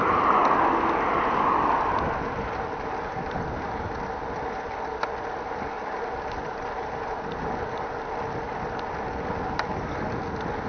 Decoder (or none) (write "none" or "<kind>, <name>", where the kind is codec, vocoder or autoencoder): none